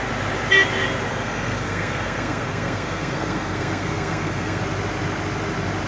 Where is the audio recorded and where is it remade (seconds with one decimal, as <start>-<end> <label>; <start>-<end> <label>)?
0.0-1.1 recorded; 1.1-4.6 remade; 4.6-5.9 recorded